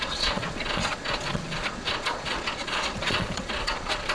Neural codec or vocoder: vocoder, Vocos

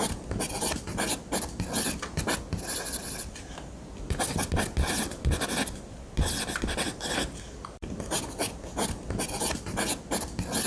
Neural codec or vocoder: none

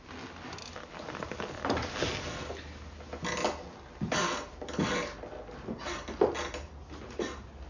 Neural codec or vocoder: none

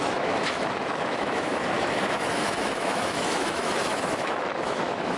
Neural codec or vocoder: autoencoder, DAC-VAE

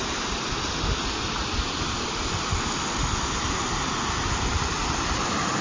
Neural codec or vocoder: none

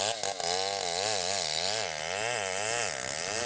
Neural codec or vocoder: none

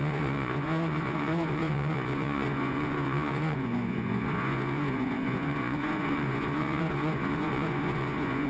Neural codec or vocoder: vocoder, Vocos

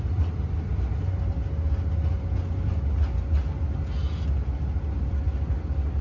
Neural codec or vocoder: none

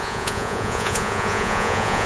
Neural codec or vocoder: vocoder, Vocos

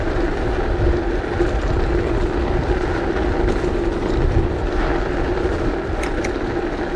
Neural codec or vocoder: none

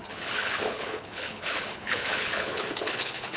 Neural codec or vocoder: codec, HILCodec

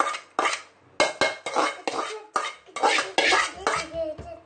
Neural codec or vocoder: none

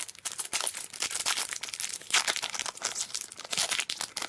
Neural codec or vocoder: none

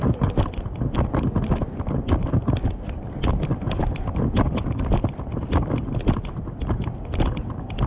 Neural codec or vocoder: none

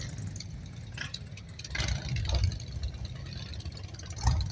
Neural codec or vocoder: none